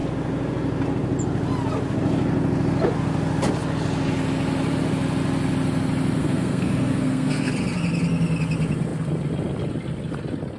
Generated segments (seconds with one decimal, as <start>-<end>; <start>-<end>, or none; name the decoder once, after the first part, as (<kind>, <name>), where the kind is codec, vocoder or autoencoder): 6.2-7.5 (codec, SNAC)